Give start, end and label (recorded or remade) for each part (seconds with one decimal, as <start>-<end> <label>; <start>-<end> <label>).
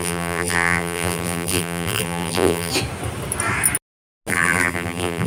0.0-2.7 remade; 2.7-4.3 recorded; 4.3-5.3 remade